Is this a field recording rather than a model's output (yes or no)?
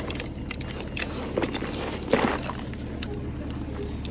yes